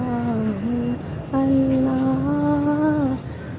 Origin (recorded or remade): recorded